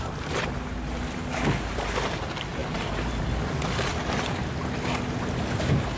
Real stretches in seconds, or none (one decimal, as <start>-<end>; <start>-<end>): 0.0-6.0

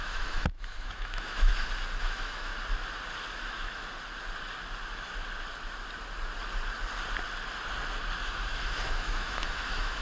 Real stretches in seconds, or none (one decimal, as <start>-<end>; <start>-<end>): 1.5-2.0; 2.5-3.4; 3.9-8.2

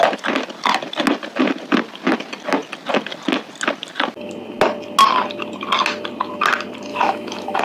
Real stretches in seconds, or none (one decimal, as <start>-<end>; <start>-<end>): 0.0-6.9

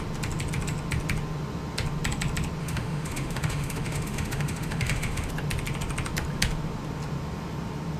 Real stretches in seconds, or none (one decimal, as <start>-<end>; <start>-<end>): 0.0-2.6; 5.3-8.0

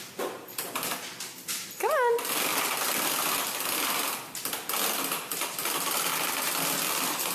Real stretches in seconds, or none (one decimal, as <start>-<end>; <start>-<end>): 0.0-7.3

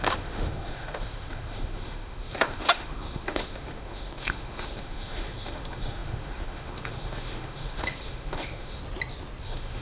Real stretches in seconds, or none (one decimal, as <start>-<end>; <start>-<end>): 8.8-9.4